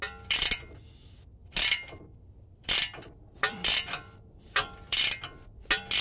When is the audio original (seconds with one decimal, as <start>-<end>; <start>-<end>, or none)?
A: 0.0-1.4; 5.0-6.0